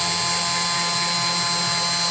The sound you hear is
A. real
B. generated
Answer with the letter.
A